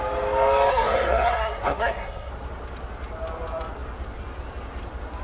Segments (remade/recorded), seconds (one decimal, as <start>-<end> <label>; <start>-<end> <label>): 0.0-0.7 recorded; 0.7-2.3 remade; 2.3-5.2 recorded